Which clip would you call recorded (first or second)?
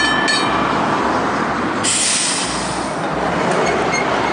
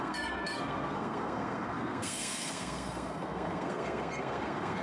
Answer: first